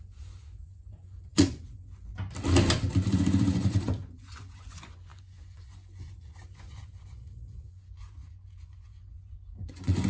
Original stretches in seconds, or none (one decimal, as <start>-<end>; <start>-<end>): 2.1-3.1

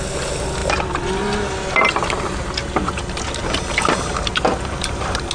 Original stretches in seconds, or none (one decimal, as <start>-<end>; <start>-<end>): 0.0-5.3

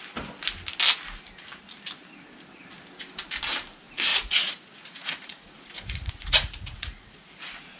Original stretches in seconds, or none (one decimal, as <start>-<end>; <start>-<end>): 0.0-4.1

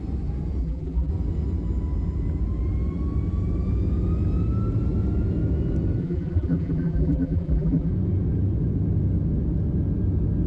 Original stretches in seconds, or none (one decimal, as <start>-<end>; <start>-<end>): 0.0-0.6; 1.1-6.0; 7.9-10.5

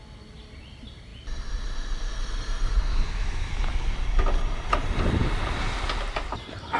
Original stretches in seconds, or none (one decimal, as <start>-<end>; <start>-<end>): 0.0-2.9; 3.8-6.8

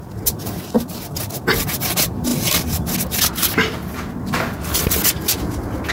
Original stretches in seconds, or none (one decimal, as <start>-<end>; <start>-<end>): 0.0-5.9